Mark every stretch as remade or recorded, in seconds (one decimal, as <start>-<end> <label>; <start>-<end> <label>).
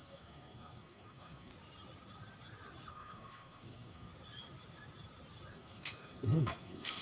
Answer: 0.0-1.5 remade; 1.5-2.9 recorded; 2.9-4.1 remade; 4.1-5.5 recorded; 5.5-7.0 remade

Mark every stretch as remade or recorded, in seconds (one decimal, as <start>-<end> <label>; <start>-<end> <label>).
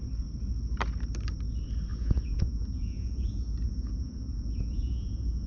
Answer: 0.0-1.9 recorded; 1.9-5.5 remade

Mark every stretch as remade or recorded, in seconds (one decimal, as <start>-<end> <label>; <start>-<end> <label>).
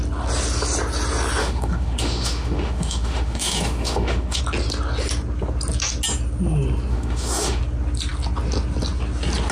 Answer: 0.0-1.4 recorded; 1.4-4.4 remade; 4.4-6.9 recorded; 6.9-7.6 remade; 7.6-9.5 recorded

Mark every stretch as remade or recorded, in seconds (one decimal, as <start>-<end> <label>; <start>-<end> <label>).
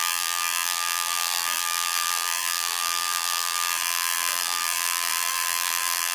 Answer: 0.0-6.1 remade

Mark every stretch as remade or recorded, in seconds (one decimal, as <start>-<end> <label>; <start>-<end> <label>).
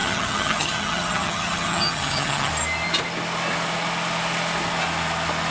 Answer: 0.0-2.5 remade; 2.5-5.5 recorded